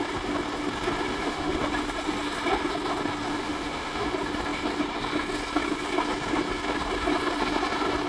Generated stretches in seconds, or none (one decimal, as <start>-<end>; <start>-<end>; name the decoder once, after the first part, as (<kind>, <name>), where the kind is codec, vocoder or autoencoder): 1.1-1.6 (autoencoder, DAC-VAE); 3.3-4.1